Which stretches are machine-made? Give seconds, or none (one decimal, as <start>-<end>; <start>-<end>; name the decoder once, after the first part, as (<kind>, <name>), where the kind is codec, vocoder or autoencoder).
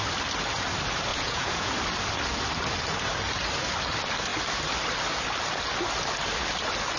1.1-1.7 (vocoder, Vocos)